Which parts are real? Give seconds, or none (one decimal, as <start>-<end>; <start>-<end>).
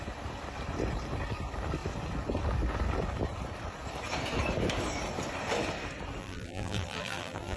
0.0-6.2